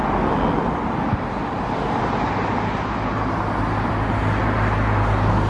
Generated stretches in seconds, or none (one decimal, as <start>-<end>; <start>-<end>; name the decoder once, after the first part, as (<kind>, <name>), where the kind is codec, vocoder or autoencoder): none